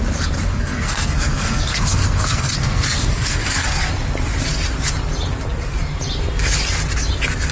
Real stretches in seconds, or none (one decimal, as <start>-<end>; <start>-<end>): 0.0-0.5; 3.9-7.5